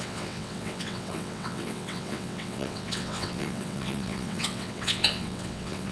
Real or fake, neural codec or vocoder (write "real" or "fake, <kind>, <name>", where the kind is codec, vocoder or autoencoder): fake, vocoder, WaveNeXt